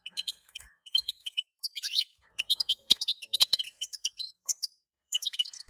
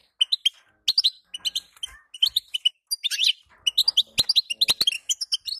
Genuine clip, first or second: second